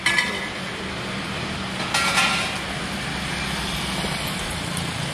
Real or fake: real